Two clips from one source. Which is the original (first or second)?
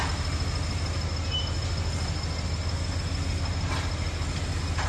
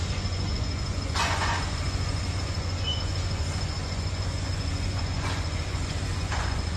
first